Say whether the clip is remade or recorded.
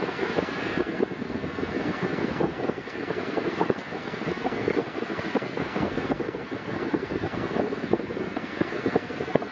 remade